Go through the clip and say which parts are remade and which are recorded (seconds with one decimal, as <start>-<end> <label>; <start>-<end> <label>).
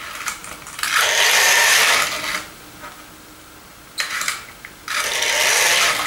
0.0-6.1 recorded